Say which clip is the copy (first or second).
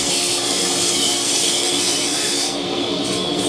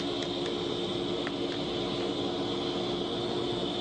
first